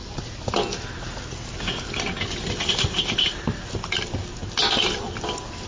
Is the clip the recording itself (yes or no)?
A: yes